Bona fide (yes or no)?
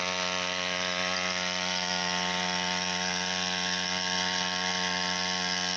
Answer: yes